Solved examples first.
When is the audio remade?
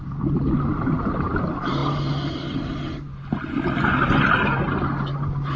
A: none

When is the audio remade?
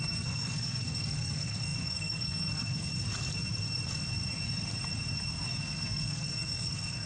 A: 0.0-2.9 (codec, SNAC); 5.6-7.1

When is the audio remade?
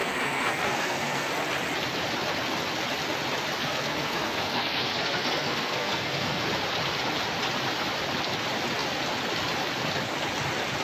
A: 0.0-1.3 (codec, SNAC); 3.6-6.4